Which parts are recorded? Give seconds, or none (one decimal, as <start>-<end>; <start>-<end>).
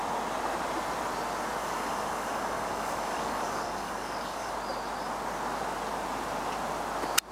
0.0-1.6; 4.5-7.3